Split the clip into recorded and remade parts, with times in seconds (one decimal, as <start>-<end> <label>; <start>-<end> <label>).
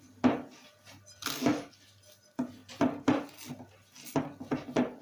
0.0-2.6 recorded; 2.6-3.2 remade; 3.2-5.0 recorded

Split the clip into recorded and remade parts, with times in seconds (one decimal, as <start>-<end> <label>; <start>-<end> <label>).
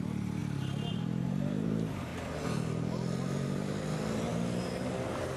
0.0-0.4 remade; 0.4-0.9 recorded; 0.9-2.1 remade; 2.1-5.4 recorded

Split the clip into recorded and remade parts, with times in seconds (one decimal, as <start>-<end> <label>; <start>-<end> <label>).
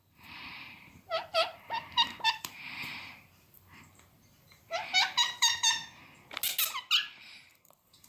0.0-5.8 remade; 5.8-7.2 recorded; 7.2-8.1 remade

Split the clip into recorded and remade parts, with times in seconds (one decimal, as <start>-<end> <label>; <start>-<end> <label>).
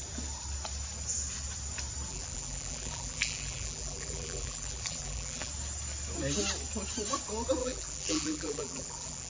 0.0-2.1 recorded; 2.1-5.5 remade; 5.5-7.6 recorded; 7.6-9.3 remade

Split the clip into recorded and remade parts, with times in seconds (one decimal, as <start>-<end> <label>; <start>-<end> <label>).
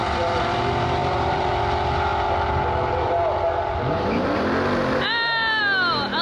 0.0-0.6 remade; 0.6-1.0 recorded; 1.0-1.5 remade; 1.5-6.2 recorded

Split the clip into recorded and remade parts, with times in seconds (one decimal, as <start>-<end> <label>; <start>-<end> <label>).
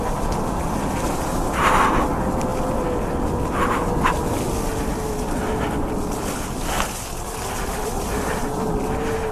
0.0-9.3 recorded